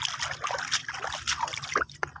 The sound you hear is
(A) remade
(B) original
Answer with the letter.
B